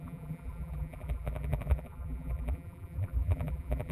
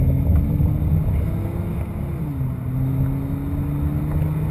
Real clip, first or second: second